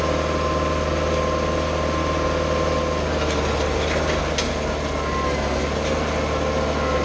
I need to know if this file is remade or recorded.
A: recorded